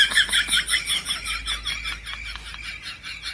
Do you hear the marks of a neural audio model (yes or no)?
no